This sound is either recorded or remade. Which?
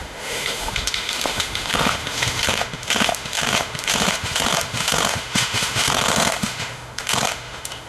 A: remade